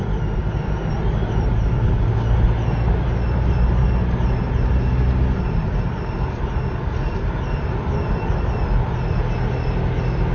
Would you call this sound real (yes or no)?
yes